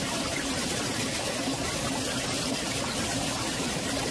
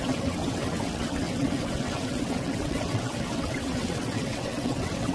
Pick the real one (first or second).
first